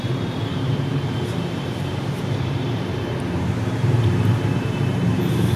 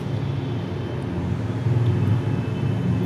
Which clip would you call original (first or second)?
second